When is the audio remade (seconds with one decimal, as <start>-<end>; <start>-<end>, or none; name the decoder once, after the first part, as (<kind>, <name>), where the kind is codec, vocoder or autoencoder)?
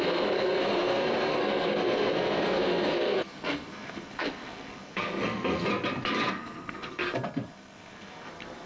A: 0.0-5.7 (codec, SNAC); 6.3-8.7